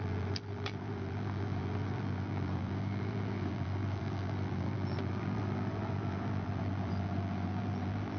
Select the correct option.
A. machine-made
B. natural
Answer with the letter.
A